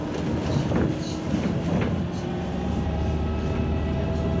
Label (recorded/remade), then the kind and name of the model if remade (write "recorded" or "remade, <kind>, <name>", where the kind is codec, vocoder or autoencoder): recorded